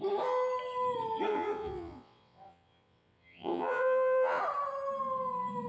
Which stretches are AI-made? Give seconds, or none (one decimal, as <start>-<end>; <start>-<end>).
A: 1.3-4.4

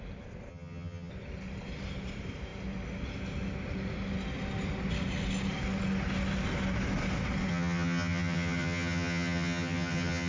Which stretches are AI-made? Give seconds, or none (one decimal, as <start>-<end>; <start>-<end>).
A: 0.5-1.1; 7.5-10.3

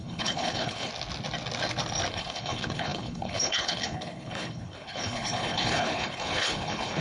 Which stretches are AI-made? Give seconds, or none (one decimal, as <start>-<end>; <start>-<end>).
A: 0.0-0.9; 2.1-7.0